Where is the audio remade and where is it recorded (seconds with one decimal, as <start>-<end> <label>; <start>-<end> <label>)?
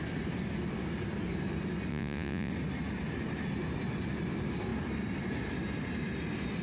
0.0-1.9 recorded; 1.9-2.5 remade; 2.5-6.6 recorded